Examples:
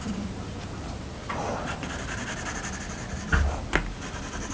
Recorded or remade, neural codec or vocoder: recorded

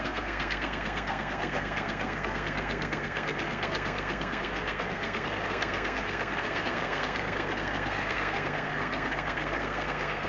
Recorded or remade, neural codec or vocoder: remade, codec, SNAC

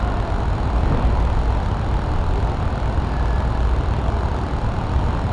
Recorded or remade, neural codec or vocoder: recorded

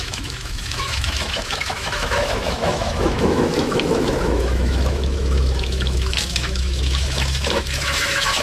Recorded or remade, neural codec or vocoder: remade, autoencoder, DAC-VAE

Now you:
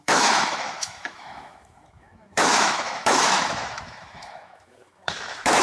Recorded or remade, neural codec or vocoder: remade, autoencoder, DAC-VAE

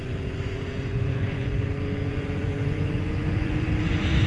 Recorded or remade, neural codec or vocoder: remade, vocoder, Vocos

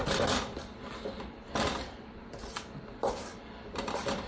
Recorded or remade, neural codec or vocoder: remade, vocoder, BigVGAN v2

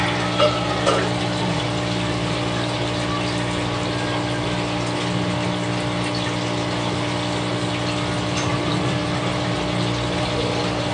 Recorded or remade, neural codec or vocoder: recorded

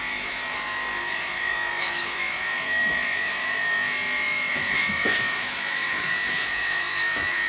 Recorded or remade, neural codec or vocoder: remade, autoencoder, DAC-VAE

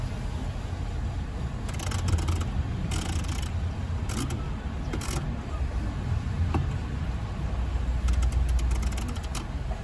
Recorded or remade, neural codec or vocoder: recorded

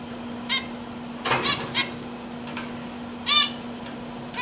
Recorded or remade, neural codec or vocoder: recorded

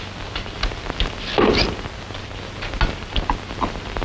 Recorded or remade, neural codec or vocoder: recorded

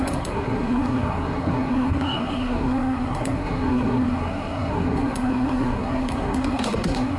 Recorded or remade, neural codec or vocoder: remade, codec, SNAC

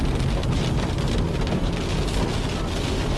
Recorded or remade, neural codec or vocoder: recorded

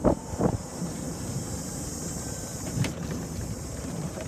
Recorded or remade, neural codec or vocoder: remade, vocoder, BigVGAN v2